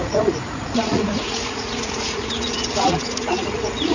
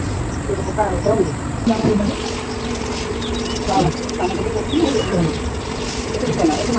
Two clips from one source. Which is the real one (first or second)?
second